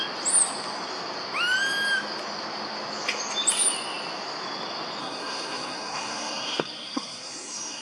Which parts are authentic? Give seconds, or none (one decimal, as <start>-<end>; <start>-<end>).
0.0-5.0